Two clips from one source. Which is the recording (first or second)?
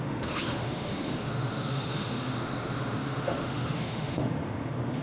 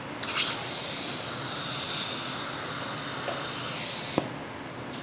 second